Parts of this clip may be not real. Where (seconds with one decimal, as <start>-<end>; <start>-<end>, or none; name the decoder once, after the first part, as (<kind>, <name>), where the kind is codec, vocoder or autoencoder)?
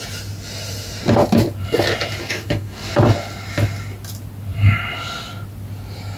2.2-2.9 (codec, DAC)